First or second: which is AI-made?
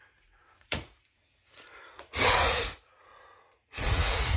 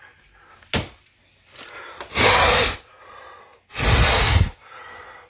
first